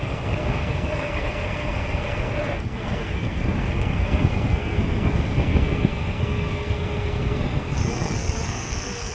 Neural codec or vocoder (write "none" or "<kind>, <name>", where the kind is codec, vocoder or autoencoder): codec, SNAC